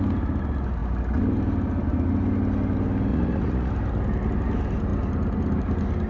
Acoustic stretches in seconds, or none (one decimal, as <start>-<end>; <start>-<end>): 0.0-3.1; 3.7-6.1